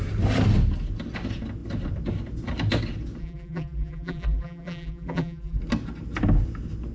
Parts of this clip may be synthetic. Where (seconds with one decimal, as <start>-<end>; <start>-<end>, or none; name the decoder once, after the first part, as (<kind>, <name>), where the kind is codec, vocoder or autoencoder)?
3.2-5.6 (vocoder, BigVGAN v2)